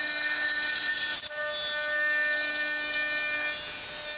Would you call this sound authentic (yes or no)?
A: yes